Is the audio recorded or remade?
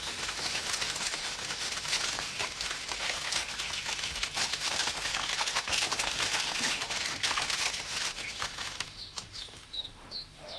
remade